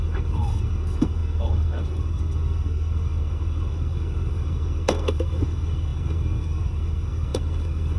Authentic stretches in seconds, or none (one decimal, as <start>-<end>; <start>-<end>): none